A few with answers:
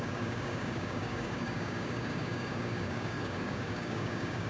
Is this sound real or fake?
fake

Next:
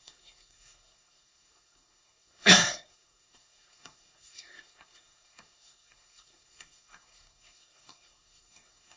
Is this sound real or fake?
fake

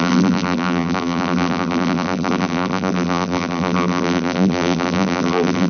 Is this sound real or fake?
fake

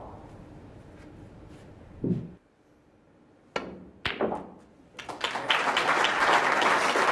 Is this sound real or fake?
real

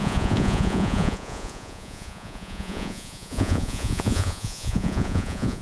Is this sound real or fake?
fake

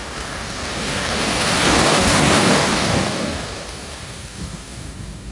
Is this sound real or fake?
fake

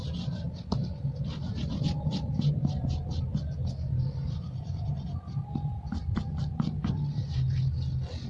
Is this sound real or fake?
real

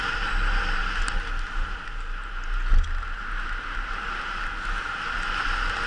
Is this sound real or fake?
real